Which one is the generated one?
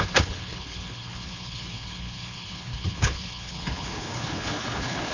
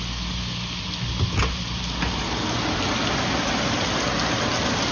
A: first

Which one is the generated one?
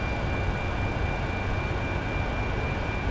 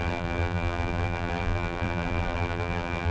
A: second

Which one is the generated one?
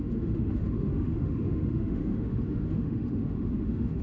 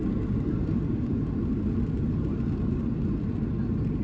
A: first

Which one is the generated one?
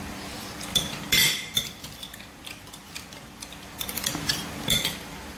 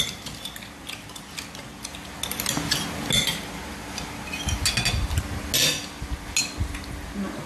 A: first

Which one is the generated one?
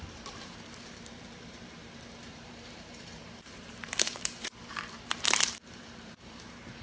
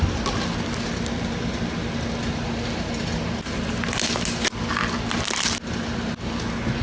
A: first